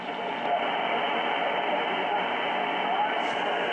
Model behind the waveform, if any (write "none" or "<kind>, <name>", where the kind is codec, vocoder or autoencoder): none